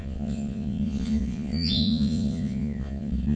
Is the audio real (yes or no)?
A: no